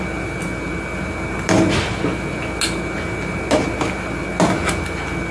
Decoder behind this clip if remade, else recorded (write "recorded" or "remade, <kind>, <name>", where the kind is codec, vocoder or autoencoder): recorded